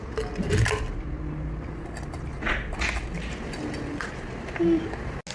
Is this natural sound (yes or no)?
yes